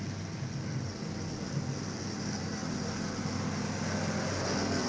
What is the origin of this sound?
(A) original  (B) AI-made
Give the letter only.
A